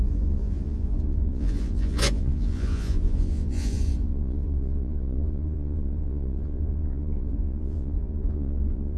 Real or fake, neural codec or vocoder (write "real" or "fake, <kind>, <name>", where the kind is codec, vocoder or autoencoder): fake, vocoder, Vocos